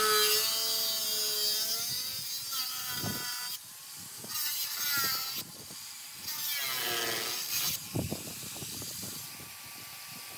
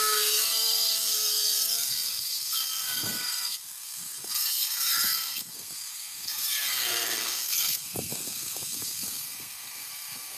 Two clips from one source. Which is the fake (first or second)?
second